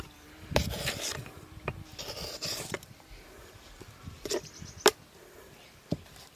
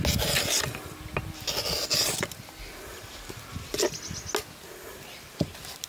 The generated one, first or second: first